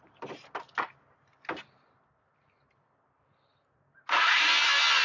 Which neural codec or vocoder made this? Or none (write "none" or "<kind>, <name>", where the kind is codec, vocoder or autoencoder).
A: none